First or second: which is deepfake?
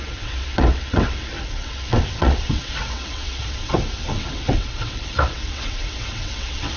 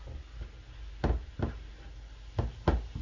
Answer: first